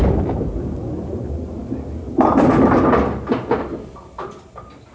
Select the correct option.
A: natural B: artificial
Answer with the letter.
A